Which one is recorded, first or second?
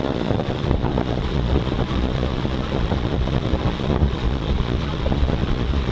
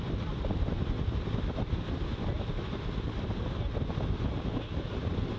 second